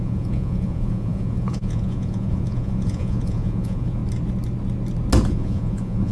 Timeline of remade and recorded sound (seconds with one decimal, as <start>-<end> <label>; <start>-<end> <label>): 0.0-4.0 remade; 4.0-5.3 recorded; 5.3-6.1 remade